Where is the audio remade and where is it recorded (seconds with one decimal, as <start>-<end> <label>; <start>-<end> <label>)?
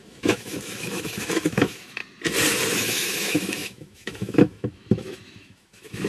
0.0-2.0 remade; 2.0-2.7 recorded; 2.7-6.1 remade